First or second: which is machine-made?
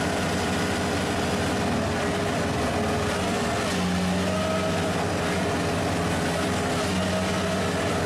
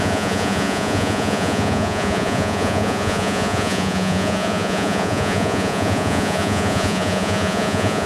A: second